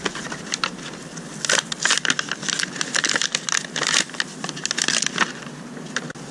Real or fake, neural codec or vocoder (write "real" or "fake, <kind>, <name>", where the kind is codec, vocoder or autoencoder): real